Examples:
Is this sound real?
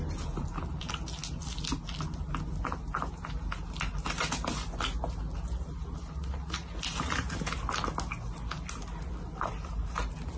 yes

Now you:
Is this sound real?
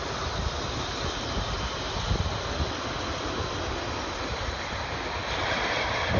yes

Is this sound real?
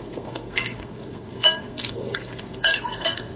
no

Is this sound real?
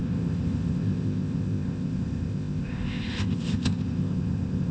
no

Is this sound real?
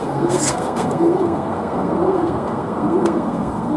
no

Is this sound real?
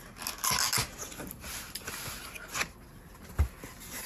yes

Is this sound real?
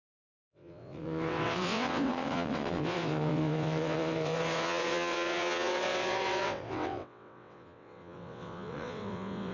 no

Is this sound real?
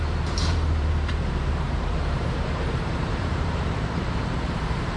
no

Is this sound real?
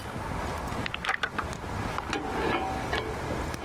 yes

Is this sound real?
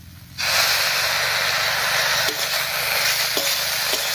yes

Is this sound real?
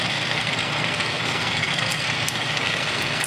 no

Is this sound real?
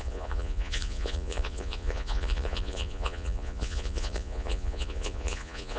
no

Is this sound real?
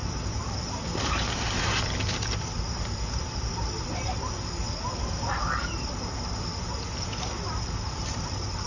no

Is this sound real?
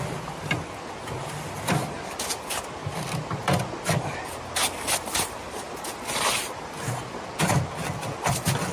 yes